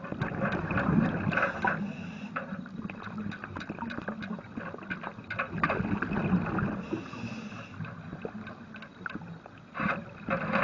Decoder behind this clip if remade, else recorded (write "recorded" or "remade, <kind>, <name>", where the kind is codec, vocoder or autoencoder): recorded